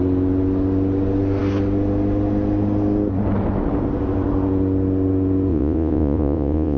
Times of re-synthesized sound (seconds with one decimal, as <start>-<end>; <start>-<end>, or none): 5.5-6.8